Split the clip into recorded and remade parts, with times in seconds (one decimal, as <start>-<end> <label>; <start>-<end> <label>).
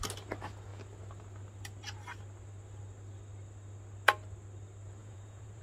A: 0.0-5.0 recorded; 5.0-5.6 remade